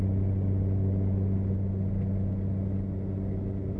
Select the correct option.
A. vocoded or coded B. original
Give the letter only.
B